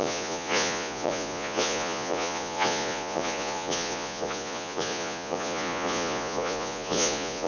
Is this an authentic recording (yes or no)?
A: no